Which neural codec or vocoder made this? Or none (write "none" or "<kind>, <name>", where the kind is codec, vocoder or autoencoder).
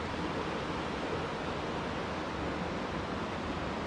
none